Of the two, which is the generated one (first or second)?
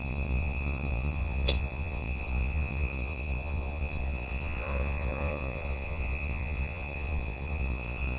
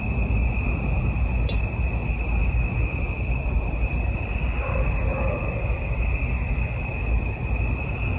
first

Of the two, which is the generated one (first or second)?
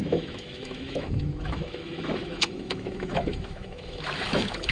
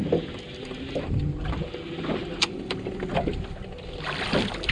first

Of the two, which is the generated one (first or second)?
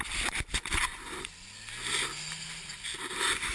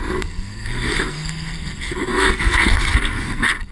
second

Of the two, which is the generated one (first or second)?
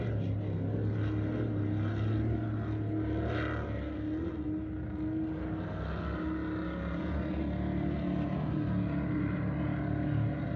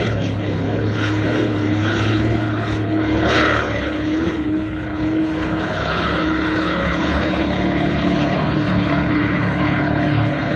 second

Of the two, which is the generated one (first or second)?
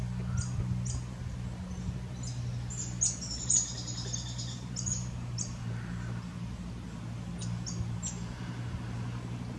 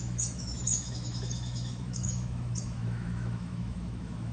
second